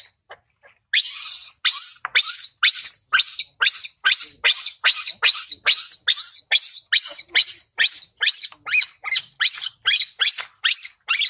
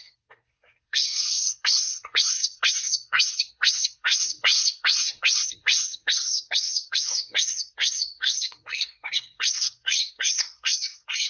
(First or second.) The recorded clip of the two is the first